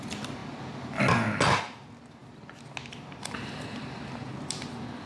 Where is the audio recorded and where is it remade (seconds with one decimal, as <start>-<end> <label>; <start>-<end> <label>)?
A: 0.0-5.1 recorded